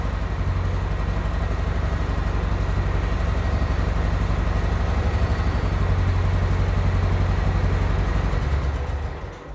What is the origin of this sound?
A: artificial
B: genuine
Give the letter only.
B